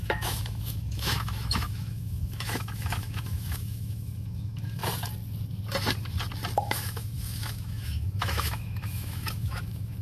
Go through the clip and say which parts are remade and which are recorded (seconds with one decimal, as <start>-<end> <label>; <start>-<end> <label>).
0.0-4.8 remade; 4.8-6.6 recorded; 6.6-10.0 remade